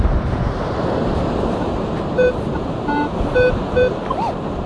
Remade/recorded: remade